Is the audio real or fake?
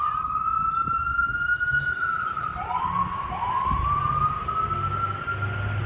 real